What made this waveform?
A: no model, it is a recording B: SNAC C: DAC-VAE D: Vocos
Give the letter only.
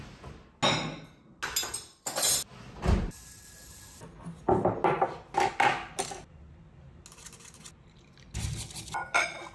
A